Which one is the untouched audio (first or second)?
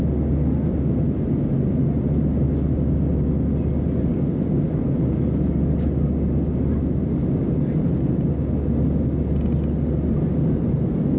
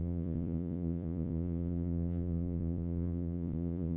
first